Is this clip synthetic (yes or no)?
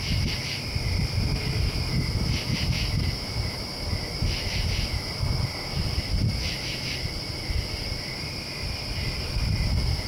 yes